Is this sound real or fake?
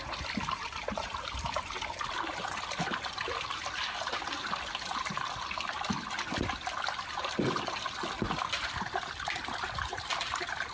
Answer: real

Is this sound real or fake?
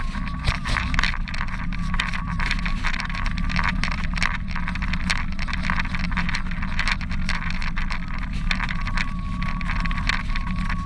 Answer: real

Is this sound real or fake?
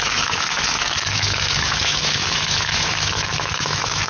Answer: fake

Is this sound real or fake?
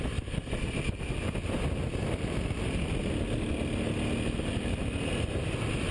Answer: real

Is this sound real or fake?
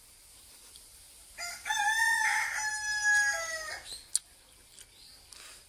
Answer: real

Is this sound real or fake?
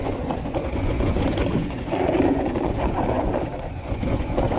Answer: fake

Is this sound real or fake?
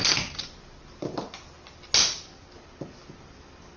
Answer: real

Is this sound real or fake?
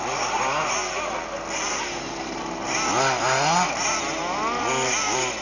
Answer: real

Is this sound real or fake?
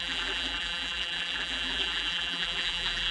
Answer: fake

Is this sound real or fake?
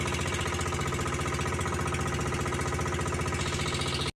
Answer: real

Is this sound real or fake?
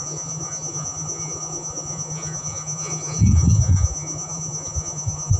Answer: fake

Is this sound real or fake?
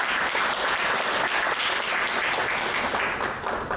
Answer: real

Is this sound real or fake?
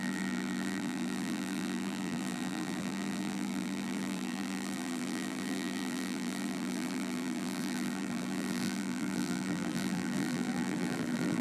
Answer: fake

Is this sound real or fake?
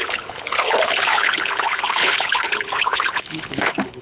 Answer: fake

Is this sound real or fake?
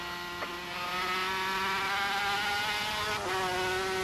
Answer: real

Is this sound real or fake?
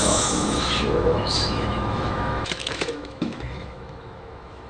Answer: fake